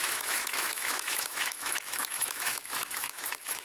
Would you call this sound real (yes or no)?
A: no